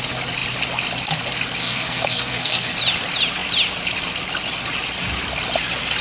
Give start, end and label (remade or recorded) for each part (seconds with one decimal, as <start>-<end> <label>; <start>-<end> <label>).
0.0-1.6 recorded; 1.6-2.8 remade; 2.8-6.0 recorded